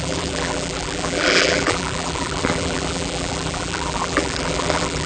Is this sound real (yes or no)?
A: no